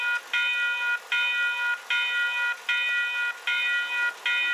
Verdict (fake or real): real